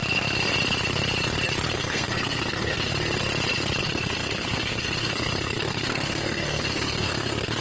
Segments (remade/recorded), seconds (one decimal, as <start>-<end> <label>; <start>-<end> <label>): 0.0-1.7 recorded; 1.7-2.9 remade; 2.9-3.8 recorded; 3.8-7.6 remade